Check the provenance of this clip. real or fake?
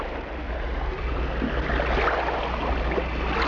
real